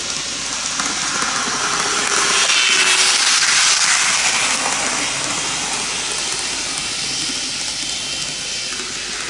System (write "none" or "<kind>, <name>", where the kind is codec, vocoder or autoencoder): none